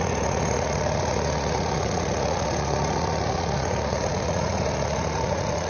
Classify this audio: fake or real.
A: fake